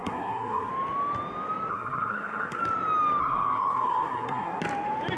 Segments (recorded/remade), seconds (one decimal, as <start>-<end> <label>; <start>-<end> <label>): 0.0-0.7 remade; 0.7-1.7 recorded; 1.7-2.6 remade; 2.6-3.2 recorded; 3.2-4.6 remade; 4.6-5.2 recorded